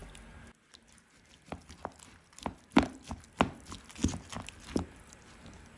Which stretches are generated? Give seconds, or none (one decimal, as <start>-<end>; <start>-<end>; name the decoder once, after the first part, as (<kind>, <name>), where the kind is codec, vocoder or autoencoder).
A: none